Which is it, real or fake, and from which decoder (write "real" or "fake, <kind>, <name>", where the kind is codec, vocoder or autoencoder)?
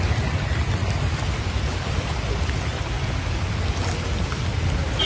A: real